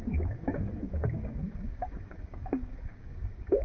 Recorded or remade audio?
remade